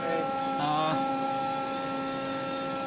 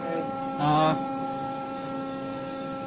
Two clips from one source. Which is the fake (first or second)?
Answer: second